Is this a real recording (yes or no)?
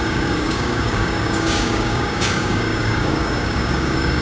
no